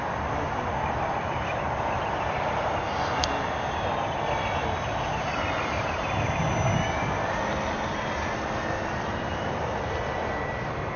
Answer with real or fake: real